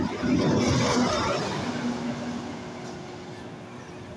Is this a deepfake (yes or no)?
no